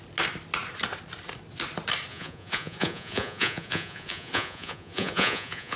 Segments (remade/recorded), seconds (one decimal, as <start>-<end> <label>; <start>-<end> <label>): 0.0-2.1 recorded; 2.1-5.8 remade